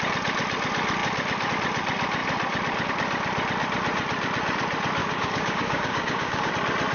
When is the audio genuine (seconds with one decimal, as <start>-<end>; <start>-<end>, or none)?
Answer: 0.0-5.0; 6.5-6.9